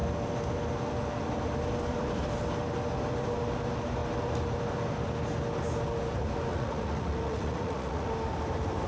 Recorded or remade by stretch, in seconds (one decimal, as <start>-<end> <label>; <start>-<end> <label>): 0.0-6.5 recorded; 6.5-8.1 remade; 8.1-8.9 recorded